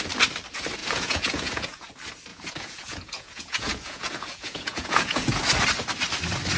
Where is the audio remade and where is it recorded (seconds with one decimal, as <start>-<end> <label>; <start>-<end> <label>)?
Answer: 0.0-0.8 recorded; 0.8-1.9 remade; 1.9-2.3 recorded; 2.3-5.4 remade; 5.4-6.6 recorded